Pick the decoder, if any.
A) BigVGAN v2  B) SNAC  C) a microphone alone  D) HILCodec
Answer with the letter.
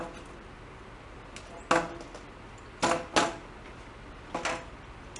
C